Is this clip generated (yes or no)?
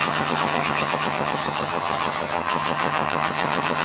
yes